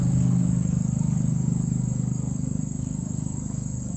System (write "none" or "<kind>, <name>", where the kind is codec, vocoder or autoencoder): codec, DAC